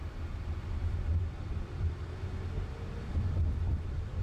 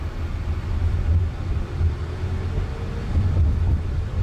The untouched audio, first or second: second